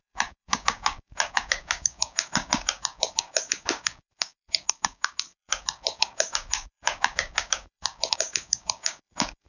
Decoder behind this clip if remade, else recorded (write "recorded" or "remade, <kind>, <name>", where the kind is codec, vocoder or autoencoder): remade, codec, DAC